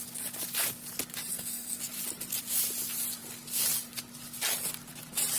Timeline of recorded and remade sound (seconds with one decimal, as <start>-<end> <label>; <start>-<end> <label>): 0.0-1.3 recorded; 1.3-1.9 remade; 1.9-5.4 recorded